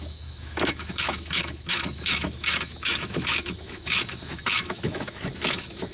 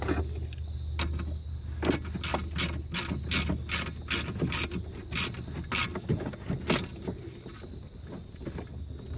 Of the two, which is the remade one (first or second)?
first